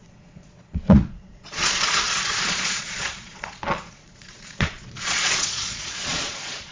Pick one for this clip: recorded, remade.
remade